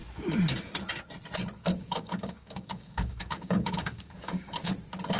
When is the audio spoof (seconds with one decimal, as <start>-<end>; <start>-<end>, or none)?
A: 1.6-4.7